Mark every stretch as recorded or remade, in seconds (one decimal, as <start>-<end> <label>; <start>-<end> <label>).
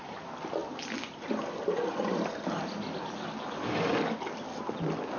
0.0-0.6 recorded; 0.6-2.6 remade; 2.6-5.2 recorded